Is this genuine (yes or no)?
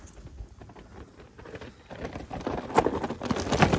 yes